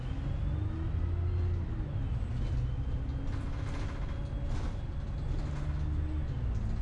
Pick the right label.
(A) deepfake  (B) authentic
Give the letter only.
B